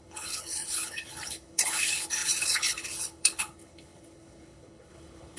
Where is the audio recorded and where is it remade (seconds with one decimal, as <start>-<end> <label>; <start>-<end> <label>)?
0.0-5.4 remade